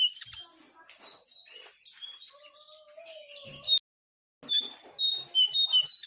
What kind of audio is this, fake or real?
real